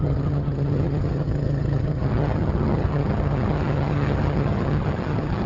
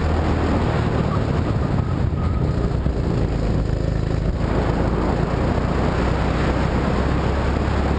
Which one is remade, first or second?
first